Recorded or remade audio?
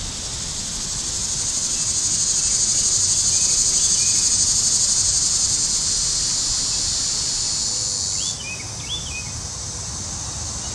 recorded